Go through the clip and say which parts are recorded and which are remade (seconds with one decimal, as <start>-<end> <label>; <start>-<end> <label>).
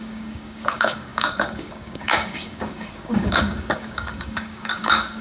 0.0-5.2 remade